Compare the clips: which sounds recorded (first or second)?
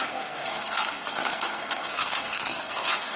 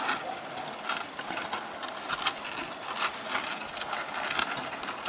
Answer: second